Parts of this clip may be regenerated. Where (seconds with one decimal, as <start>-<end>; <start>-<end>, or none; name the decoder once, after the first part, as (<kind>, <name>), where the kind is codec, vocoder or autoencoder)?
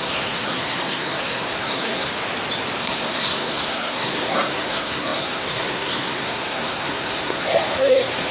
0.0-2.1 (codec, SNAC); 2.8-8.3